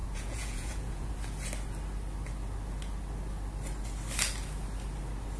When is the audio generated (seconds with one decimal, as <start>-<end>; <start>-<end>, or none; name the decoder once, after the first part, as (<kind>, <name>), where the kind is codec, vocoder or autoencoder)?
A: 0.0-1.1 (vocoder, Vocos)